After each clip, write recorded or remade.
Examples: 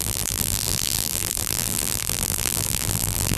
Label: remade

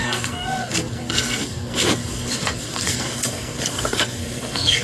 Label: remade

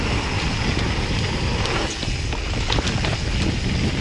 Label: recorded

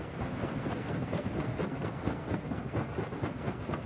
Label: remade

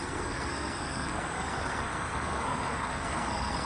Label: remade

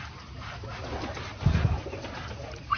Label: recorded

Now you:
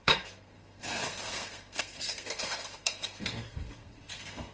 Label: remade